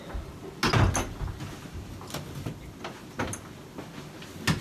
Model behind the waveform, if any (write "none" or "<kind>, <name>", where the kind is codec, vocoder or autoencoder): none